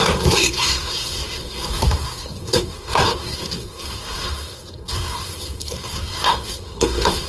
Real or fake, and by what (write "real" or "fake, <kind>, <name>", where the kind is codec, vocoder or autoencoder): fake, codec, SNAC